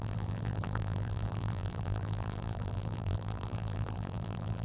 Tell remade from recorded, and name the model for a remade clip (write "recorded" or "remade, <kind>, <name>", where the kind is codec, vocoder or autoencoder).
remade, vocoder, BigVGAN v2